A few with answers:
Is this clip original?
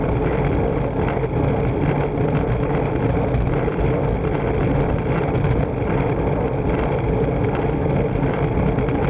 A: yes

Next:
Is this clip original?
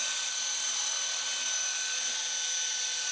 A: yes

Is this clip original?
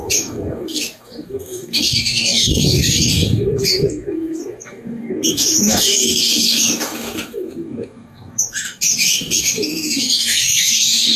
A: no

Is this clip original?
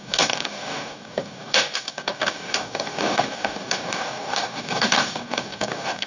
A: no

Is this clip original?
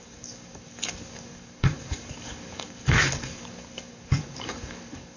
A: no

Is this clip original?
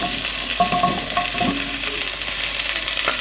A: yes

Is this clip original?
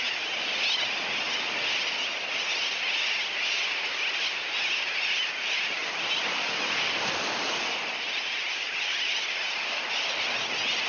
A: yes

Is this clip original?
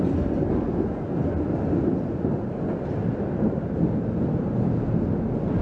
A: yes